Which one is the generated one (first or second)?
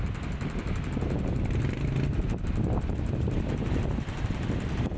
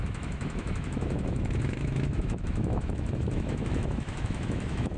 second